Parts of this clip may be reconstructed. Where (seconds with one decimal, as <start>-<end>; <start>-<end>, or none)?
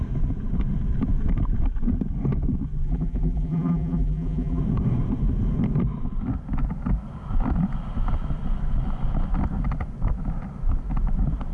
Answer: 2.8-4.6